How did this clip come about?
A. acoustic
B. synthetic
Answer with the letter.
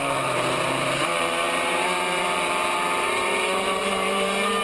B